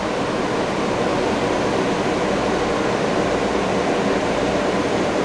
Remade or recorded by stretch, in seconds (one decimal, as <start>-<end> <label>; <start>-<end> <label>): 0.0-0.6 recorded; 0.6-1.1 remade; 1.1-4.2 recorded; 4.2-5.2 remade